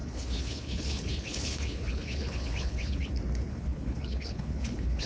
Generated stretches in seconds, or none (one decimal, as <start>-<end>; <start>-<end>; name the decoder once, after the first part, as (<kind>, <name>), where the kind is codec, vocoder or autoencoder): 0.0-3.1 (codec, HILCodec); 3.5-5.1